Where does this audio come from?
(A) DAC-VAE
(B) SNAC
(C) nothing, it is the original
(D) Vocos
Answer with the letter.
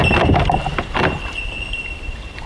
C